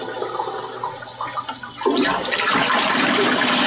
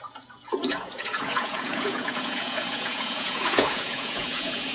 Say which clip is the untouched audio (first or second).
first